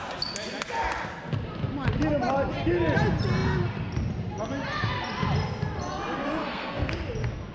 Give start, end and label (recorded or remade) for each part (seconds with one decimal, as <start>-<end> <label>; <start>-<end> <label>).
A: 0.0-6.4 recorded; 6.4-6.9 remade; 6.9-7.5 recorded